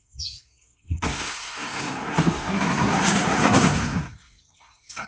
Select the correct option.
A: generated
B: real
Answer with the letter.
A